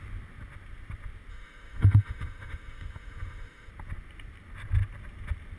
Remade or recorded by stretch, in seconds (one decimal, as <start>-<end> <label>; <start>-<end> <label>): 0.0-1.3 recorded; 1.3-3.7 remade; 3.7-5.6 recorded